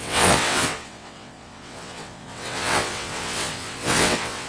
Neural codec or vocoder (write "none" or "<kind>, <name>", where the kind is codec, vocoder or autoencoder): vocoder, WaveNeXt